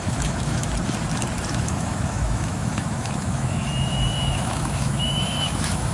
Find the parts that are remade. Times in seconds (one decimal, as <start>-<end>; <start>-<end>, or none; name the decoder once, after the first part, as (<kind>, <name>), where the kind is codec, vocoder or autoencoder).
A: 0.0-0.7 (autoencoder, DAC-VAE); 1.5-5.9